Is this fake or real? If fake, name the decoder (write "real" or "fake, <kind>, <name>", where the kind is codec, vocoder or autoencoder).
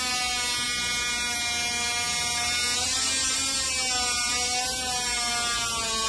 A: real